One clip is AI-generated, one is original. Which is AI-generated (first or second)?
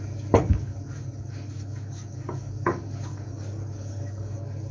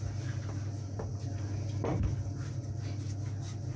first